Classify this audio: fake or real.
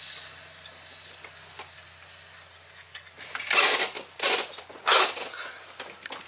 real